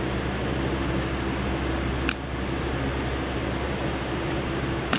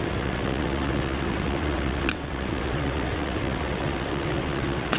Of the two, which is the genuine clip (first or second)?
first